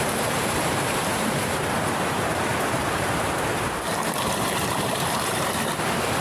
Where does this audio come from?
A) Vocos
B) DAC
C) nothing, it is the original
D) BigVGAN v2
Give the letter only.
D